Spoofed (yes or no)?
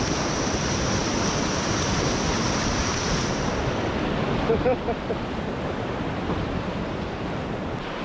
yes